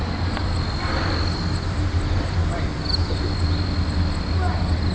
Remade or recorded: recorded